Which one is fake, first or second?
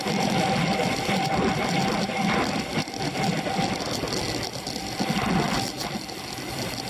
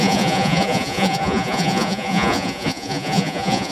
second